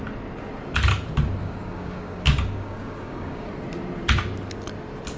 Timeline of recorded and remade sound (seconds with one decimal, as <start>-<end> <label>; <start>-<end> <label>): 0.0-1.4 recorded; 1.4-3.5 remade; 3.5-5.2 recorded